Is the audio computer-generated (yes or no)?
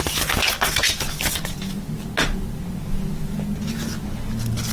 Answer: no